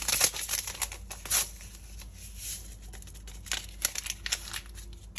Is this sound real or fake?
real